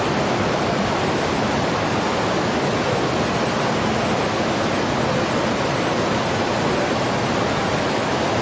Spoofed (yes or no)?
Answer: no